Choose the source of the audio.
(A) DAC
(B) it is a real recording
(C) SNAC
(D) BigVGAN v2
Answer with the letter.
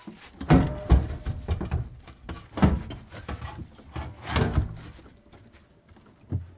B